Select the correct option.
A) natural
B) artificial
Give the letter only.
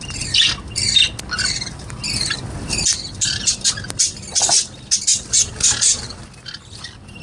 A